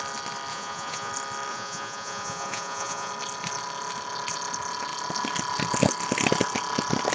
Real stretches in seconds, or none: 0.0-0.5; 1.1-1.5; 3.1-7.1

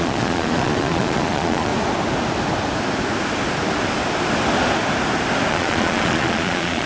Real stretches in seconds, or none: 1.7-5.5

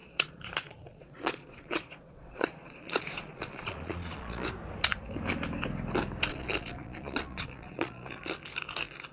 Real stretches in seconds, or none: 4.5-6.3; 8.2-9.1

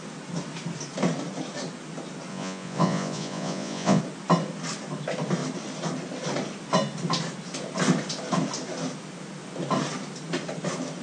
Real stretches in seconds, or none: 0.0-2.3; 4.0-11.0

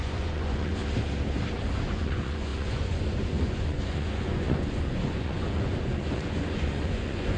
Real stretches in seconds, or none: 0.8-1.5

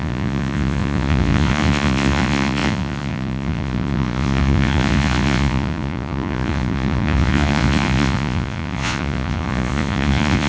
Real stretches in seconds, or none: none